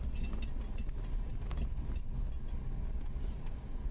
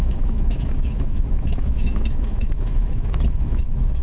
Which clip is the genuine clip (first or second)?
first